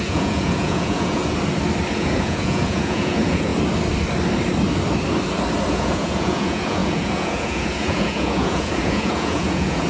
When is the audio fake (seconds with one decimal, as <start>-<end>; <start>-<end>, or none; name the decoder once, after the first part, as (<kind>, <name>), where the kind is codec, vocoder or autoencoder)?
0.0-1.2 (vocoder, Vocos); 1.9-3.5; 5.7-9.9